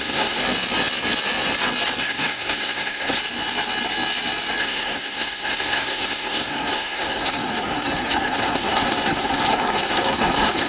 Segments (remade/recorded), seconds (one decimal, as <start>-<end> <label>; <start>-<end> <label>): 0.0-0.4 remade; 0.4-2.0 recorded; 2.0-3.2 remade; 3.2-4.6 recorded; 4.6-10.7 remade